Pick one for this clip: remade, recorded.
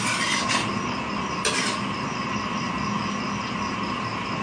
recorded